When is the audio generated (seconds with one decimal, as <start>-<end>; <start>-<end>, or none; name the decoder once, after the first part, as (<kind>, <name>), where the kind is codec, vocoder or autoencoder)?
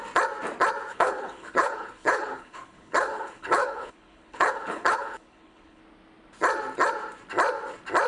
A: 0.9-5.8 (codec, HILCodec)